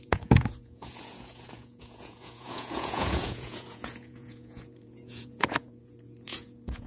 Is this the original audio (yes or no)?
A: no